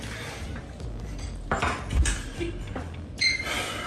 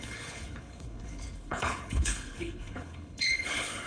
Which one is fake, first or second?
second